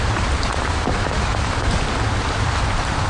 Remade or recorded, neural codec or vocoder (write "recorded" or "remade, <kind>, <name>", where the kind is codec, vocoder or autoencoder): remade, vocoder, BigVGAN v2